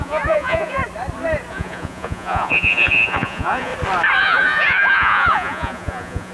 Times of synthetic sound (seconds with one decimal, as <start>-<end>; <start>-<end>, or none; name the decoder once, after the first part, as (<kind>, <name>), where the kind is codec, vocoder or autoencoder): 0.0-0.8 (vocoder, Vocos); 1.5-3.7; 4.2-6.3